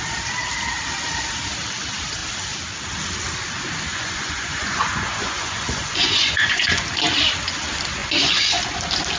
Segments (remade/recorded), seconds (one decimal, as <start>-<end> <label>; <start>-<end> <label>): 0.0-3.9 recorded; 3.9-6.8 remade; 6.8-8.0 recorded; 8.0-8.6 remade; 8.6-9.2 recorded